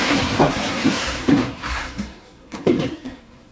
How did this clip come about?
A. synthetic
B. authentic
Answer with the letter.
A